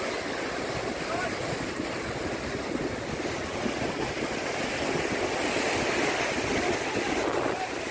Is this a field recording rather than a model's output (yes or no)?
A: yes